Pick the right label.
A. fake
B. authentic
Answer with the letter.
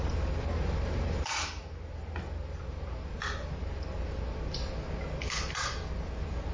B